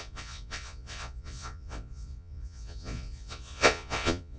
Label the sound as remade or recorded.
remade